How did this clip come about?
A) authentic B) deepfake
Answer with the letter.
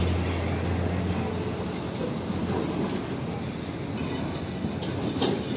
A